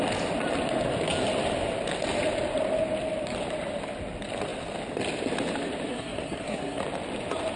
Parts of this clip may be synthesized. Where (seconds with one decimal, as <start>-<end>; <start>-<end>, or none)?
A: 5.9-6.8